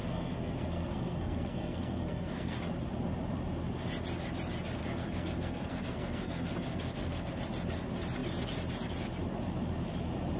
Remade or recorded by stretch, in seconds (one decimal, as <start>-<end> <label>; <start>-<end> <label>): 0.0-2.7 remade; 2.7-4.8 recorded; 4.8-7.3 remade; 7.3-10.4 recorded